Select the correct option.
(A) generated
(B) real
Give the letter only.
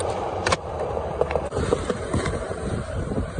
A